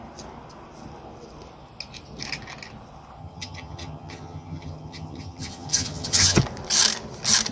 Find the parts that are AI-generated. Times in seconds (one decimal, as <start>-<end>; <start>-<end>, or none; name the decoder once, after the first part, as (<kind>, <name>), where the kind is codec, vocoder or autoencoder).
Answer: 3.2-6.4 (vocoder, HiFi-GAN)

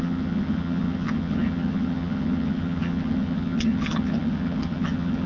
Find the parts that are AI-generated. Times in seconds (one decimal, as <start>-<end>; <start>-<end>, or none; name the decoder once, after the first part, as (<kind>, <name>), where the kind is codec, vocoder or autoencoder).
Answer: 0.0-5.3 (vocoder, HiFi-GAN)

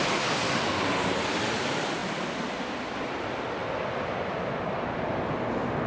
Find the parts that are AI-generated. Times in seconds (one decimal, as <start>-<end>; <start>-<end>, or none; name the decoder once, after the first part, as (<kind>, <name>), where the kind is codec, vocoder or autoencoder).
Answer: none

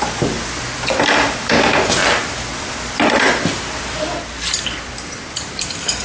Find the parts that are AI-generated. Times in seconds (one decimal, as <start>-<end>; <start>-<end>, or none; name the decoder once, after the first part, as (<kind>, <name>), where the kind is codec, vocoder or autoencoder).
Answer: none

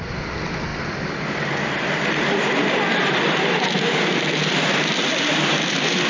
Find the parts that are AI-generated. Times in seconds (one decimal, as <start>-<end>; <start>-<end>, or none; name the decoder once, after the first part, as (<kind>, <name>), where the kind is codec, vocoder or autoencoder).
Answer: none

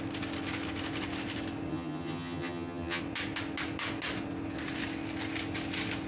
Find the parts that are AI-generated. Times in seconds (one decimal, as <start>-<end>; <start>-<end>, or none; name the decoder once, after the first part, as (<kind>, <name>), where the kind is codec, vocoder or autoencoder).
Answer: 1.7-3.0 (vocoder, HiFi-GAN)

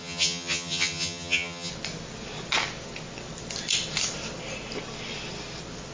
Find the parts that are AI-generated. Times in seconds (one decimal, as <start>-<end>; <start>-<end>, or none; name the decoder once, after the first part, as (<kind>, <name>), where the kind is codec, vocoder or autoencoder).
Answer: 0.0-1.7 (vocoder, HiFi-GAN)